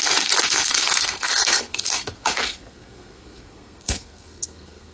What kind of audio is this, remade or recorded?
remade